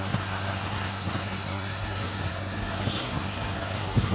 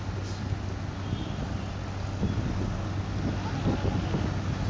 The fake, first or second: first